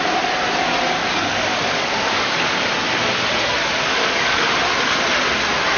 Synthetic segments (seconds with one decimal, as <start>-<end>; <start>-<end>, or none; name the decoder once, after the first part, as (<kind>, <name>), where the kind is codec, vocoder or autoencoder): 1.0-2.5 (codec, DAC); 3.6-4.5